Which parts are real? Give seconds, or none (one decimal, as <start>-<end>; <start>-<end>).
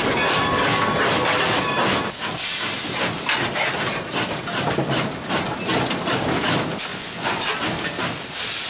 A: 0.0-6.9; 7.4-8.7